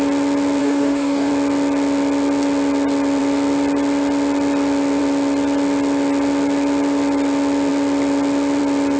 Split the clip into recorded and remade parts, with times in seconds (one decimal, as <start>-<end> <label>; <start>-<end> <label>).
0.0-0.6 recorded; 0.6-1.3 remade; 1.3-9.0 recorded